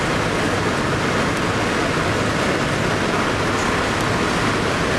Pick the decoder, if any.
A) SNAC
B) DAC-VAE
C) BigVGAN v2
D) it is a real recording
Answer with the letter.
D